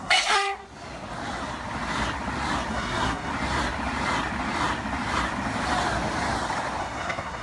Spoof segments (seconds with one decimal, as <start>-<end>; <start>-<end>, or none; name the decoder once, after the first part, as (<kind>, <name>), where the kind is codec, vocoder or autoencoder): 0.0-0.6 (codec, SNAC); 2.7-3.3; 6.8-7.4